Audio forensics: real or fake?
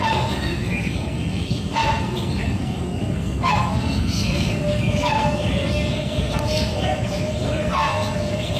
fake